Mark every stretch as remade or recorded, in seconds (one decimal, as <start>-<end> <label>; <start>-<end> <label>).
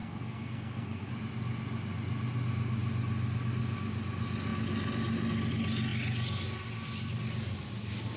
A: 0.0-1.1 remade; 1.1-8.2 recorded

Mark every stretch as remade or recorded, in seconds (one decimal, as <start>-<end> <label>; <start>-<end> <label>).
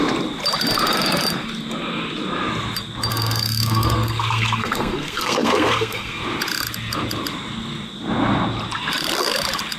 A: 0.0-3.1 recorded; 3.1-6.2 remade; 6.2-9.8 recorded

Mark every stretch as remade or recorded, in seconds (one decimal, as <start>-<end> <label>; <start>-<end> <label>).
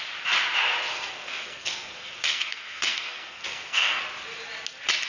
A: 0.0-0.9 recorded; 0.9-4.0 remade; 4.0-5.1 recorded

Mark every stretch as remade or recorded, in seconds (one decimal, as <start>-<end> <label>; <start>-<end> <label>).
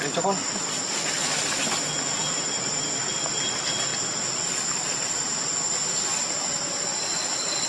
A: 0.0-7.7 recorded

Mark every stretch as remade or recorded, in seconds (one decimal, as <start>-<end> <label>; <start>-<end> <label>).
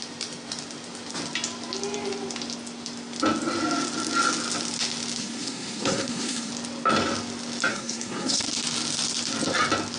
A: 0.0-5.2 recorded; 5.2-6.5 remade; 6.5-7.7 recorded; 7.7-8.4 remade; 8.4-10.0 recorded